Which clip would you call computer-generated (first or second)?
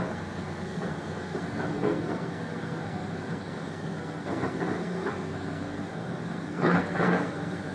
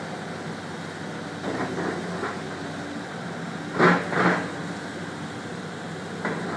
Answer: first